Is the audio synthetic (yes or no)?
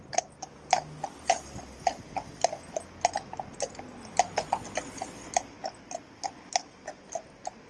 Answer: no